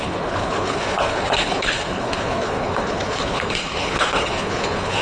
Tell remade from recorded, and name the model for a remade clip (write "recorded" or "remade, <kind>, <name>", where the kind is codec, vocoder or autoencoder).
remade, codec, HILCodec